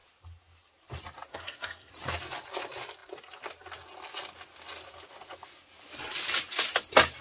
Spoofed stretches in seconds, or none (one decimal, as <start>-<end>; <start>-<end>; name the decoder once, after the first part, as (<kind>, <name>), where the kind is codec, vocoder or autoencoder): 1.3-1.9 (codec, SNAC)